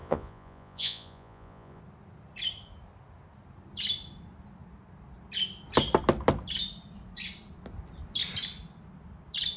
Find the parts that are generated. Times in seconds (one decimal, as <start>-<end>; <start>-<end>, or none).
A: 0.0-1.8